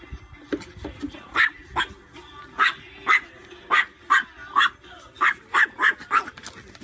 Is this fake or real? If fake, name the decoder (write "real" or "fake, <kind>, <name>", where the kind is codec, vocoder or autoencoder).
real